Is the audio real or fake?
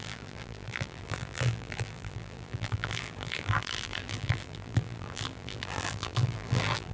fake